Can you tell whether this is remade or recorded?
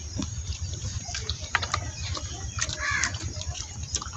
remade